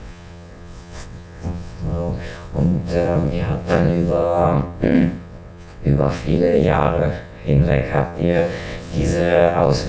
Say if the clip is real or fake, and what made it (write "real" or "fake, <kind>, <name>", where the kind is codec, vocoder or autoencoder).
fake, vocoder, WaveNeXt